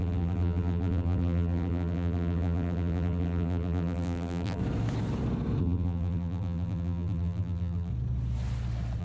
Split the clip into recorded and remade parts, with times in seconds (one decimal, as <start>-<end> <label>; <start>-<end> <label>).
0.0-4.6 remade; 4.6-5.6 recorded; 5.6-7.9 remade; 7.9-9.0 recorded

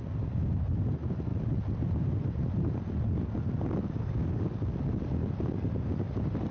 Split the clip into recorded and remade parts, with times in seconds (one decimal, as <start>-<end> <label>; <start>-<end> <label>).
0.0-6.5 recorded

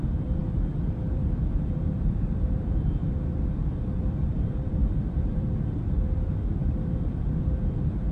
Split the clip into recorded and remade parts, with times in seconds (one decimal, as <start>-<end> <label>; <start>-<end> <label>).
0.0-8.1 remade

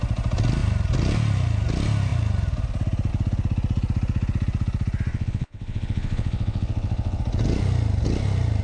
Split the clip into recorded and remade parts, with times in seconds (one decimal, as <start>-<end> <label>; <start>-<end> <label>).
0.0-5.1 recorded; 5.1-7.2 remade; 7.2-8.6 recorded